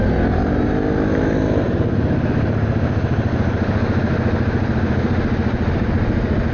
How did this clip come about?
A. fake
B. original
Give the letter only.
B